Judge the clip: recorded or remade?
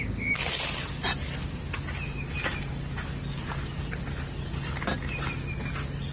recorded